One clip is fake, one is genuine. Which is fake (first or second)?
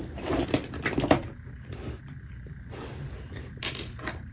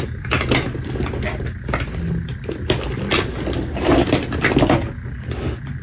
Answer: first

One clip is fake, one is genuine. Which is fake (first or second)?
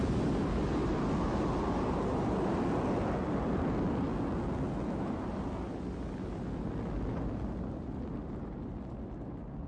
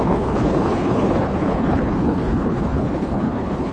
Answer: second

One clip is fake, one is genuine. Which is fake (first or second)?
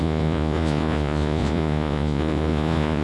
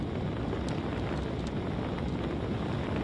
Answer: first